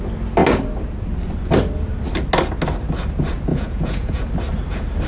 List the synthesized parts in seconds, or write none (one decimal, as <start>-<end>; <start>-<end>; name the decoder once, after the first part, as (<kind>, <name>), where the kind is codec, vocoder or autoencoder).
3.5-4.3 (vocoder, Vocos)